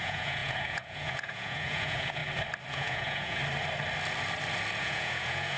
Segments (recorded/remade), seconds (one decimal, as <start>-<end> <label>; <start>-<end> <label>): 0.0-2.2 remade; 2.2-2.7 recorded; 2.7-3.4 remade; 3.4-4.8 recorded; 4.8-5.6 remade